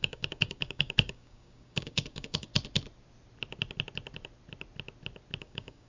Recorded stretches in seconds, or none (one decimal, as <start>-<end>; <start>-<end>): 2.5-5.4